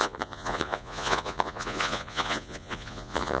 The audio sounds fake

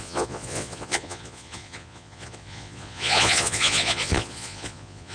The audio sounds fake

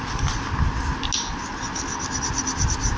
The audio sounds real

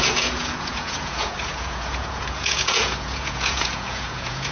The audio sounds fake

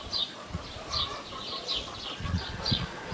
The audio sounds fake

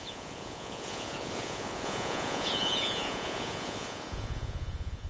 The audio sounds fake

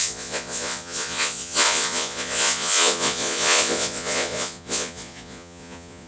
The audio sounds fake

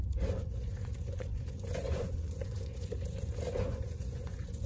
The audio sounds fake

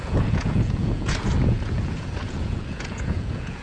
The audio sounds fake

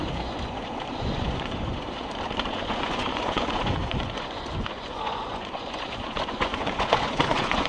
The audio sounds fake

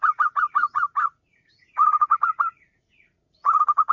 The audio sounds fake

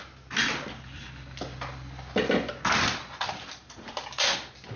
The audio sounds real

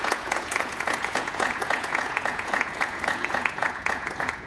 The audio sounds fake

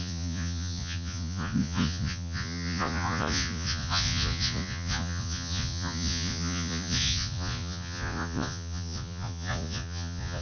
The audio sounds fake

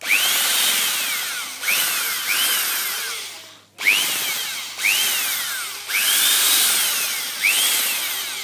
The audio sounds real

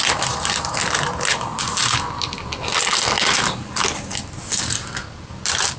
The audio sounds real